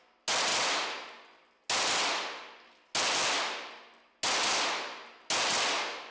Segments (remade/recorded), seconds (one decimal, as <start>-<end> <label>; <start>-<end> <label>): 0.0-6.1 recorded